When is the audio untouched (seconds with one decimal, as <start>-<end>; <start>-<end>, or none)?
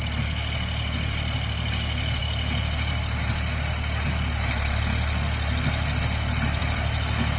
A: 0.0-7.4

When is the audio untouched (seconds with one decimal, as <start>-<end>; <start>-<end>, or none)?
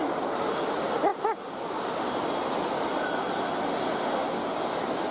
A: 0.0-5.1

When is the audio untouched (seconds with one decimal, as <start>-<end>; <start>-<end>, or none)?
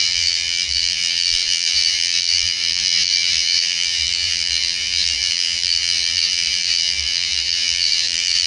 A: none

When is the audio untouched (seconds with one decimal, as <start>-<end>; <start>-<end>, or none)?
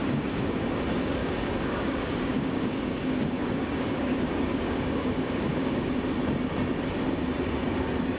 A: 0.7-1.2; 5.9-8.2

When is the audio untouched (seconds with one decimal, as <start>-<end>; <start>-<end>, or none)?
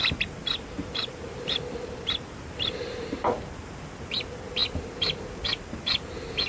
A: 0.0-0.4; 3.4-6.5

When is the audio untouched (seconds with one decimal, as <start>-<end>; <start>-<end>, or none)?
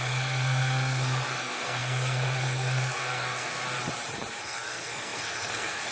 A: 3.6-4.4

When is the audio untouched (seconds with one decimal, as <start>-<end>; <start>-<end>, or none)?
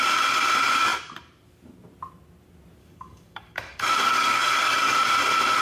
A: 0.0-2.8; 5.1-5.6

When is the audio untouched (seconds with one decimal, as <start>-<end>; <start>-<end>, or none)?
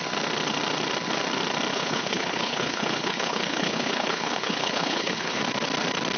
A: 0.0-1.7; 5.4-6.2